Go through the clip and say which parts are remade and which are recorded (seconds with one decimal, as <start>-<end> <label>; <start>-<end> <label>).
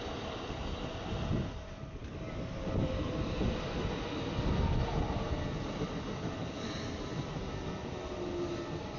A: 0.0-9.0 recorded